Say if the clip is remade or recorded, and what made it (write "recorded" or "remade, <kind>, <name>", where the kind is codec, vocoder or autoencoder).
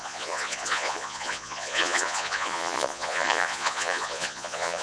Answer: remade, vocoder, Vocos